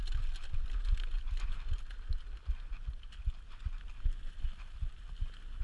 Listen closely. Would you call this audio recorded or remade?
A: recorded